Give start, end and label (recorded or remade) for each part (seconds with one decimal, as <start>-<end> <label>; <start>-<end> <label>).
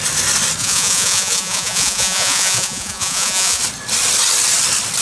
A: 0.0-0.6 recorded; 0.6-3.6 remade; 3.6-5.0 recorded